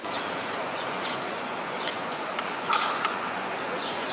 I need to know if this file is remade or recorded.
remade